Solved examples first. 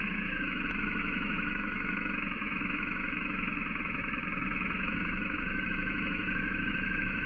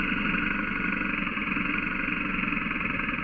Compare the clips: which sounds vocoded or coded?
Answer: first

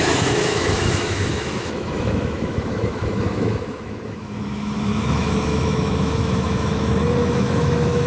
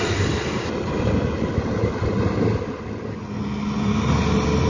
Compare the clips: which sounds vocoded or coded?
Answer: first